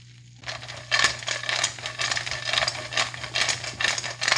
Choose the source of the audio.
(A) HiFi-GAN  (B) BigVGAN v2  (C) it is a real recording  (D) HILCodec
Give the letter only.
C